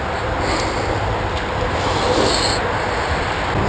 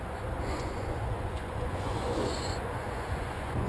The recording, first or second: first